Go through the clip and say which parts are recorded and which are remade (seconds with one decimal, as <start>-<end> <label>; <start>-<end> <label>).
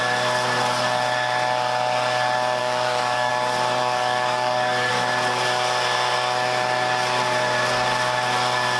0.0-2.6 recorded; 2.6-3.3 remade; 3.3-3.8 recorded; 3.8-4.9 remade; 4.9-8.8 recorded